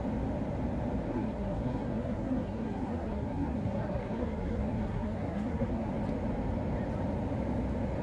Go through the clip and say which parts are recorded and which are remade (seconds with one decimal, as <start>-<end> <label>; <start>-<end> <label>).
0.0-1.1 recorded; 1.1-5.9 remade; 5.9-8.0 recorded